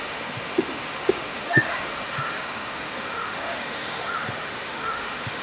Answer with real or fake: fake